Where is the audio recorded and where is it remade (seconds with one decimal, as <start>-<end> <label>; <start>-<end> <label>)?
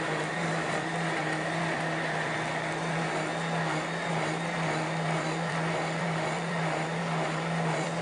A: 0.0-3.3 remade; 3.3-4.1 recorded; 4.1-8.0 remade